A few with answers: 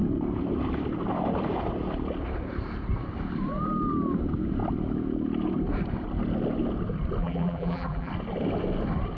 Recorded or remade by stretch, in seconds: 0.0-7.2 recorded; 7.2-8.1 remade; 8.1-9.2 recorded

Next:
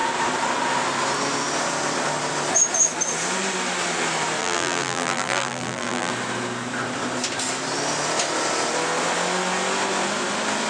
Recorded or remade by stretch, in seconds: 0.0-4.4 recorded; 4.4-6.1 remade; 6.1-10.7 recorded

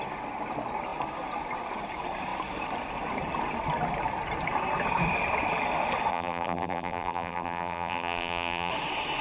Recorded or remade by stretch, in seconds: 0.0-6.1 recorded; 6.1-8.7 remade; 8.7-9.2 recorded

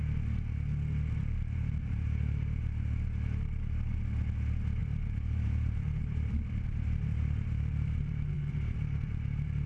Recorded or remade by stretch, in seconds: 0.0-1.2 recorded; 1.2-2.6 remade; 2.6-4.8 recorded; 4.8-9.7 remade